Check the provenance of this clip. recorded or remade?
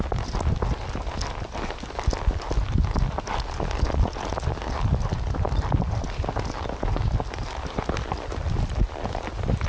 recorded